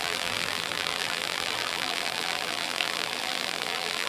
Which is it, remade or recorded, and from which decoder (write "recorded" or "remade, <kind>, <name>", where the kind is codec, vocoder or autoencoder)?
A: remade, vocoder, BigVGAN v2